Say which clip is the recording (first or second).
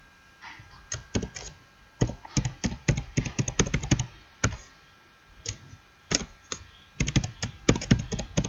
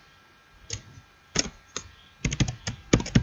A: second